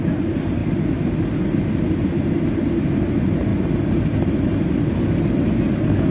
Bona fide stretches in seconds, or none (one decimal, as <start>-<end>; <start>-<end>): 0.0-6.1